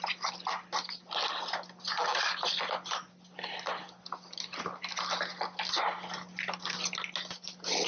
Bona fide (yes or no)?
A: yes